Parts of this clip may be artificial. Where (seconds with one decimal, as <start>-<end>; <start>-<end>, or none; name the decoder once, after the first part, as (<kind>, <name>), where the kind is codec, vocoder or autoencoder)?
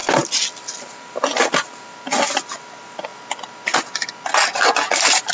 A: none